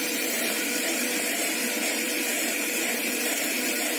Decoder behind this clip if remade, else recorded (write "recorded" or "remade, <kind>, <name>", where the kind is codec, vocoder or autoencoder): remade, vocoder, BigVGAN v2